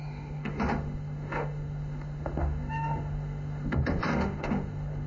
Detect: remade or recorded remade